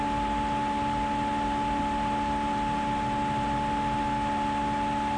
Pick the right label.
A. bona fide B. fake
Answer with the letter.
A